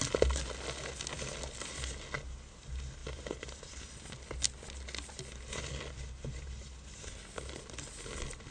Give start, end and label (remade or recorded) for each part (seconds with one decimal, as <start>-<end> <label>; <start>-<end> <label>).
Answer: 0.0-8.5 recorded